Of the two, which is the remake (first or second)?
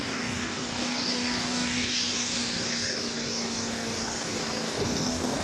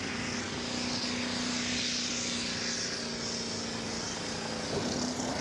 first